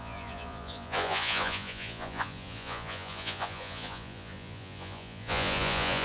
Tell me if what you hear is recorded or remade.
remade